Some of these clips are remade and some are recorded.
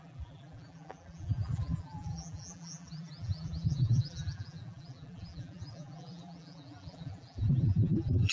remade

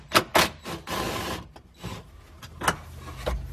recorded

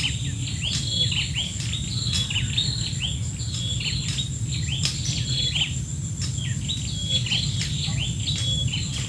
recorded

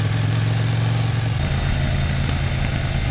recorded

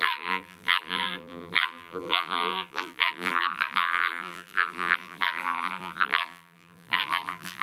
remade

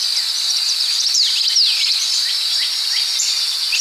remade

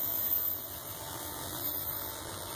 remade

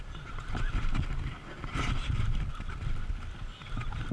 recorded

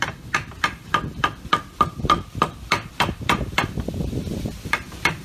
remade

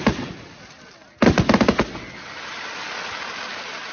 recorded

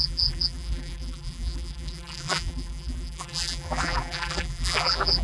remade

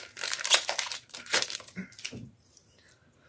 remade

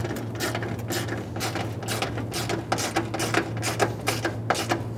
recorded